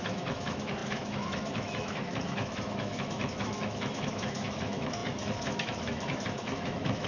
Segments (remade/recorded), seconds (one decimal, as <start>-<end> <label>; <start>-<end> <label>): 0.0-7.1 remade